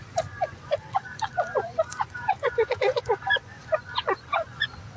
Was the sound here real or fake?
fake